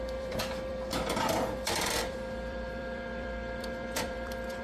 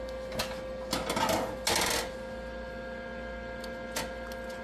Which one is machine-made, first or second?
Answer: first